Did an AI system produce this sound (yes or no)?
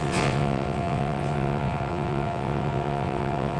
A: yes